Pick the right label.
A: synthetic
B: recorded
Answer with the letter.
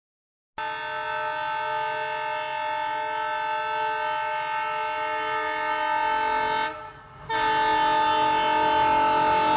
B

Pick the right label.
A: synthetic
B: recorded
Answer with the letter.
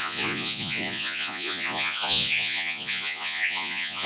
A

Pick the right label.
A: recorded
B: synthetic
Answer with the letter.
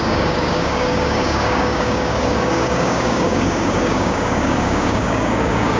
B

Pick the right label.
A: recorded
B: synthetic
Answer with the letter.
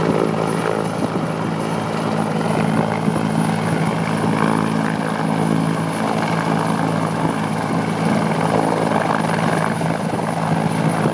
A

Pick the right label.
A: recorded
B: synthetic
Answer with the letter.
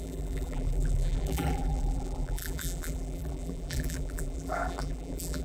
B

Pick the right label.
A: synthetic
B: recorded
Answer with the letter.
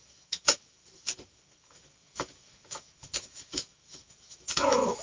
A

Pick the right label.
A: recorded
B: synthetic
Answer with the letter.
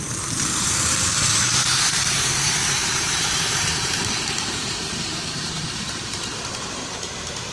B